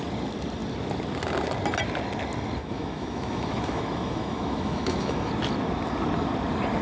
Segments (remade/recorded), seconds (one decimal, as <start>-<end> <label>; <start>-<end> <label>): 0.0-2.6 recorded; 2.6-5.3 remade; 5.3-6.8 recorded

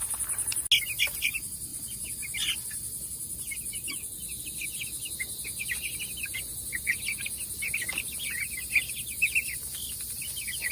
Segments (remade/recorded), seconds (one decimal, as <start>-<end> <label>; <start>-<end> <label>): 0.0-10.7 recorded

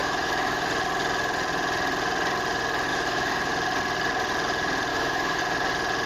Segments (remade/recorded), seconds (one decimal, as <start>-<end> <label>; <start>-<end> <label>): 0.0-0.7 remade; 0.7-2.9 recorded; 2.9-3.5 remade; 3.5-4.9 recorded; 4.9-5.4 remade; 5.4-6.1 recorded

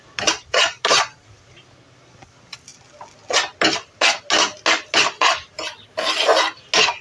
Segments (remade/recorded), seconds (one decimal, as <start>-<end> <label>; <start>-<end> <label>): 0.0-7.0 recorded

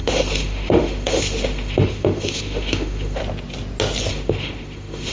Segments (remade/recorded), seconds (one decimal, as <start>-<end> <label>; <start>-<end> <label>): 0.0-3.2 remade; 3.2-4.1 recorded; 4.1-5.1 remade

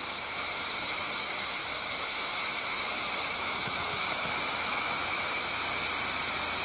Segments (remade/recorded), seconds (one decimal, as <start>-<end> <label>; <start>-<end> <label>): 0.0-0.5 recorded; 0.5-4.3 remade; 4.3-4.7 recorded; 4.7-5.4 remade; 5.4-6.6 recorded